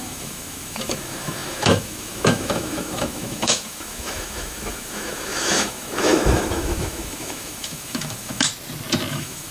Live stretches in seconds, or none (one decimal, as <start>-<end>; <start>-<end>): 8.5-9.1